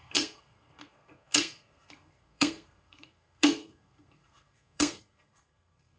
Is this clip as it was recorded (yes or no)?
no